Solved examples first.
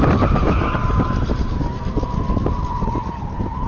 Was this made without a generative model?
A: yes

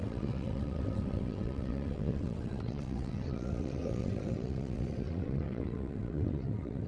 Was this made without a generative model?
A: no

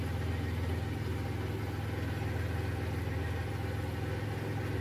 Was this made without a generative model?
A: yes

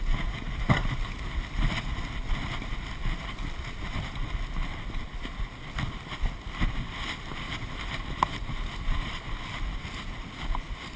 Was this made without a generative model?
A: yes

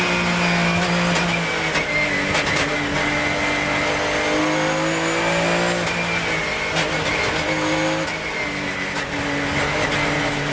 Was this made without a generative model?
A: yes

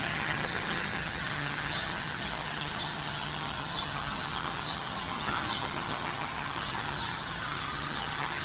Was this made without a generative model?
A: no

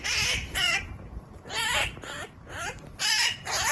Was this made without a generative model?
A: no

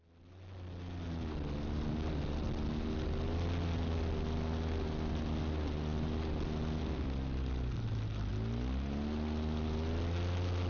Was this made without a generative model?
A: yes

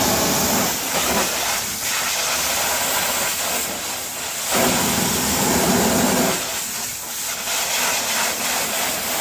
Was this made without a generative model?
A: yes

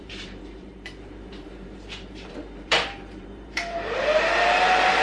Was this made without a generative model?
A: no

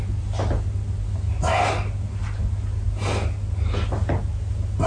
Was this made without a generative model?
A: yes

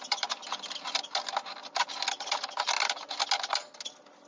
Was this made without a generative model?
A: yes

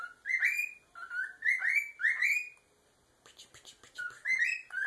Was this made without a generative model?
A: yes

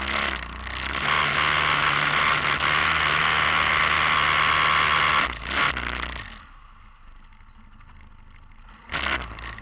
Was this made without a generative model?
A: yes